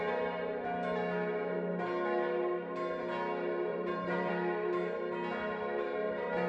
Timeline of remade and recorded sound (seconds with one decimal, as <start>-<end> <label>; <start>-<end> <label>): 0.0-3.7 recorded; 3.7-4.3 remade; 4.3-6.5 recorded